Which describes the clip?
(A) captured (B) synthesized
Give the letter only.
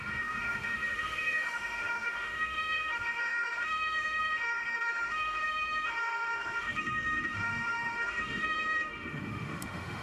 B